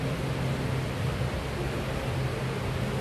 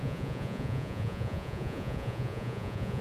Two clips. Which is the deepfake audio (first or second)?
second